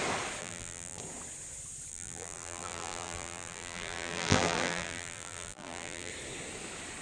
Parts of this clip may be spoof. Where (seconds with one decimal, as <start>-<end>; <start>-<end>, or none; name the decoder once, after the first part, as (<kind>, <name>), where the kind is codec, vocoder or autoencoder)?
0.4-1.0 (vocoder, BigVGAN v2); 1.9-6.1